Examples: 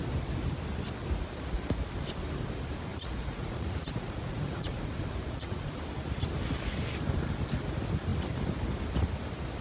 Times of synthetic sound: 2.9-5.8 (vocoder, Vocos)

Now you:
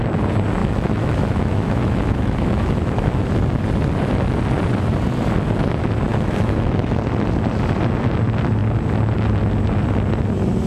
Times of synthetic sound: 0.6-3.2 (autoencoder, DAC-VAE); 6.1-7.0

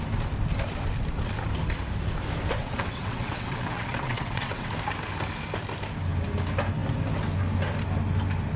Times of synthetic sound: 2.6-4.7 (vocoder, WaveNeXt)

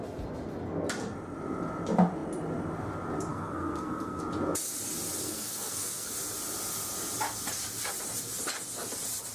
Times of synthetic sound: 3.3-4.2 (codec, SNAC); 5.2-6.1